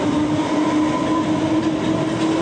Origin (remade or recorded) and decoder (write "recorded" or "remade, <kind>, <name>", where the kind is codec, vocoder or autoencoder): recorded